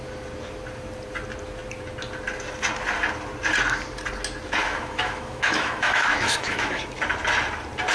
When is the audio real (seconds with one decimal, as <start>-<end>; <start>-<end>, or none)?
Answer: 0.0-4.6; 6.8-7.9